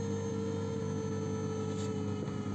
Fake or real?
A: real